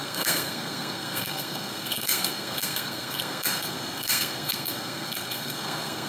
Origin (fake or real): fake